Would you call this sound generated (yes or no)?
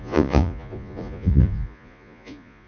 yes